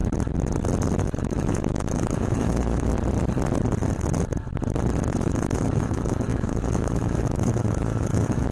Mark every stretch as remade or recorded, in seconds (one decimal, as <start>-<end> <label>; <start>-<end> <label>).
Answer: 0.0-1.0 recorded; 1.0-2.9 remade; 2.9-5.1 recorded; 5.1-8.5 remade